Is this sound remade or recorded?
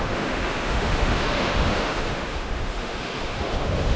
remade